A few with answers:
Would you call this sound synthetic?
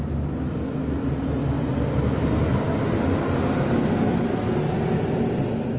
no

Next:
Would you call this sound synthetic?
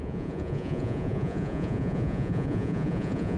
yes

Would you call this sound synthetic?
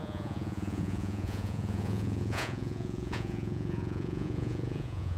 yes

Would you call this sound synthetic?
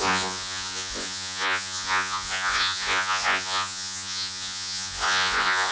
yes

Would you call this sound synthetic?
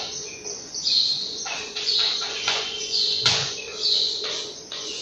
yes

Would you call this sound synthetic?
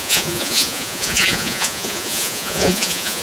yes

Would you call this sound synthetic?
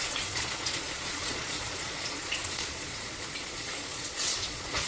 yes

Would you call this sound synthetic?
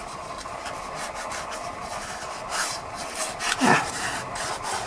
no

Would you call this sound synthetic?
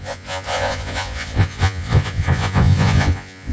yes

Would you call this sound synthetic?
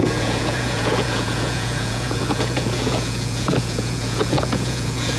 yes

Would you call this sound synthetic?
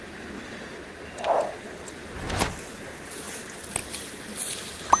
no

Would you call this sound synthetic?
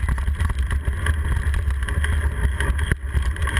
no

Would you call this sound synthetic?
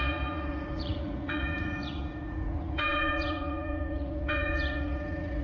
yes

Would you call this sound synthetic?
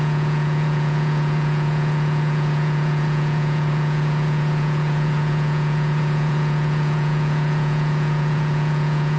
yes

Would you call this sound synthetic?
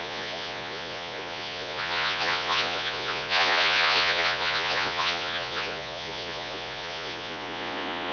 yes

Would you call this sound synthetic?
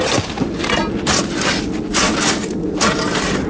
no